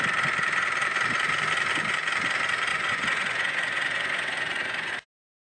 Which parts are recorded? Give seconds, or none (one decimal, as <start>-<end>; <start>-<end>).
0.0-2.7; 4.9-5.4